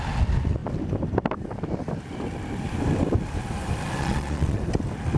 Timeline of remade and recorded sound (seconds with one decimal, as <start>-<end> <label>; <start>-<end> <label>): 0.0-4.0 recorded; 4.0-4.6 remade; 4.6-5.2 recorded